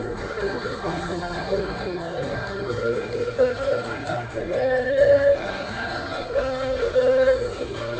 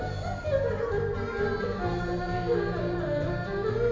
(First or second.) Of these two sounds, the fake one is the first